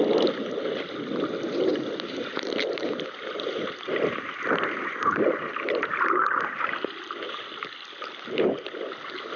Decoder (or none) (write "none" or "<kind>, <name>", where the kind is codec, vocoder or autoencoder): none